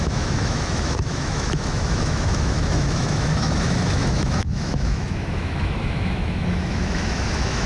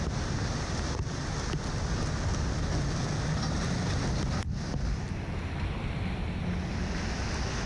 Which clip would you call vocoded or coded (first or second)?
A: first